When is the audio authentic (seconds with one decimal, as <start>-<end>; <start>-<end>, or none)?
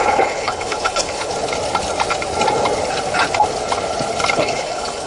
1.3-4.4